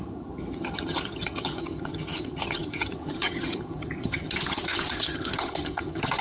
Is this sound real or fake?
fake